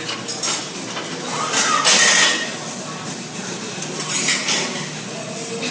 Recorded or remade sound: recorded